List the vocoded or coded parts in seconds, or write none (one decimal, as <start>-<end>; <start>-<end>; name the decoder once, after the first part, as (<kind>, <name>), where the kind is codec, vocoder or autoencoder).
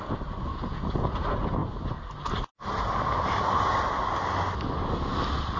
0.5-1.2 (vocoder, Vocos)